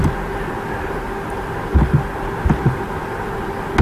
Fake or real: real